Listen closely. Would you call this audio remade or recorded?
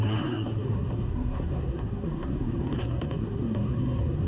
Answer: remade